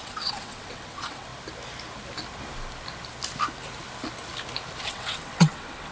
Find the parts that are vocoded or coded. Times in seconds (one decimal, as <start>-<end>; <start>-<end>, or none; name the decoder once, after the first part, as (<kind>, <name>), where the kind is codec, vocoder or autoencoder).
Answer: 0.0-1.3 (vocoder, WaveNeXt); 4.8-5.9